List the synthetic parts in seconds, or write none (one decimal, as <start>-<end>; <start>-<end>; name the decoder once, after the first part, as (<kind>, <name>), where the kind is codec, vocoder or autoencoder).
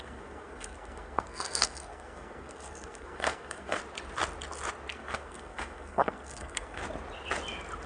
0.0-3.8 (codec, SNAC); 4.9-6.8